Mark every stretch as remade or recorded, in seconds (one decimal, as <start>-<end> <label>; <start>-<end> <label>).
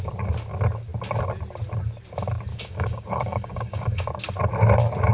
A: 0.0-2.5 recorded; 2.5-4.1 remade; 4.1-5.1 recorded